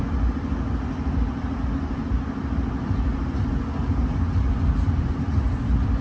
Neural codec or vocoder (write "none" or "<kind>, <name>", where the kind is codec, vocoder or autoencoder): none